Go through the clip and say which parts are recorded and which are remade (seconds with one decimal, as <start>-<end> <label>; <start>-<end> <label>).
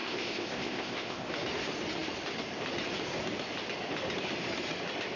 0.0-1.3 remade; 1.3-5.2 recorded